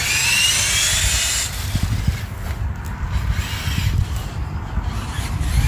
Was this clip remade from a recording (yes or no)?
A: no